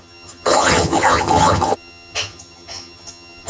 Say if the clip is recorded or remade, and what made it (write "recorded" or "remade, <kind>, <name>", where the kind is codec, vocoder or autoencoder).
remade, vocoder, HiFi-GAN